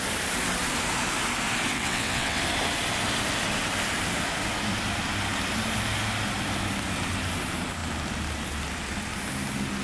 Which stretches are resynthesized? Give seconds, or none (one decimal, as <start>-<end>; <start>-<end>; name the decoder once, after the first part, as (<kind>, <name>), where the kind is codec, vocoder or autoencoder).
1.7-2.4 (vocoder, WaveNeXt)